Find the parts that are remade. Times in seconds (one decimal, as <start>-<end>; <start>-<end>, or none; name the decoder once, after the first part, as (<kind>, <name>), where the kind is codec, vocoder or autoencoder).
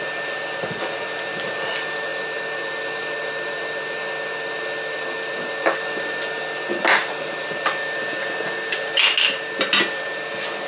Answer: none